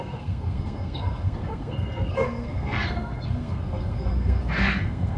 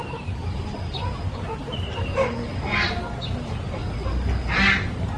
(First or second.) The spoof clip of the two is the first